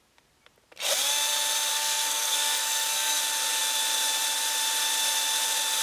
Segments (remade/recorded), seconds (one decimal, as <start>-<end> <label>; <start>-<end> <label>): 0.0-1.7 recorded; 1.7-3.2 remade; 3.2-5.8 recorded